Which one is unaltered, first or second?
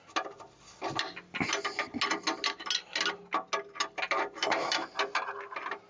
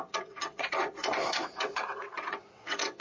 first